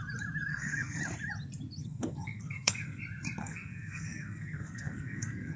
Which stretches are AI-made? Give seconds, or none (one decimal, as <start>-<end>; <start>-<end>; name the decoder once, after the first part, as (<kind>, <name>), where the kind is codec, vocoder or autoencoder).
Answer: 0.5-1.0 (codec, SNAC); 1.8-3.0; 3.4-5.6